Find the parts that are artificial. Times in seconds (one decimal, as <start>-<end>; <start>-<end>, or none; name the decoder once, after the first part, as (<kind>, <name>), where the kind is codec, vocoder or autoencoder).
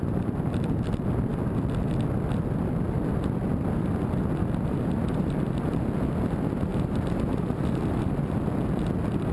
6.7-8.0 (vocoder, BigVGAN v2)